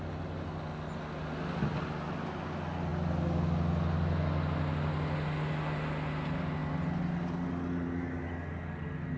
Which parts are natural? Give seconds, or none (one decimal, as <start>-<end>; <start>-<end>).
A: 0.0-9.2